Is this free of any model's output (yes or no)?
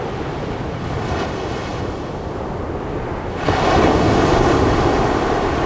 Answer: yes